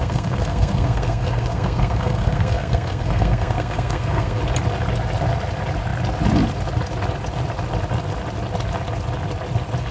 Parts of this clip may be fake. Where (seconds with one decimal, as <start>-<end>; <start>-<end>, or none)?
0.0-4.4